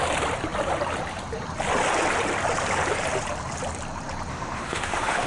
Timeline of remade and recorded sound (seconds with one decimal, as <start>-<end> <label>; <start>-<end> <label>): 0.0-4.3 recorded; 4.3-5.3 remade